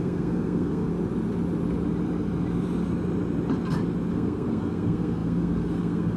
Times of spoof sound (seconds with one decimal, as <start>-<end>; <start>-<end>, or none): 0.0-0.9; 4.1-6.2